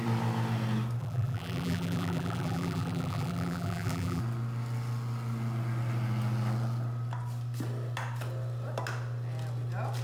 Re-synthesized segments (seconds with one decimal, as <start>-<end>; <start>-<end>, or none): 1.0-4.2